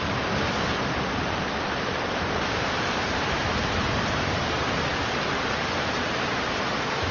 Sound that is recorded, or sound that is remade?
remade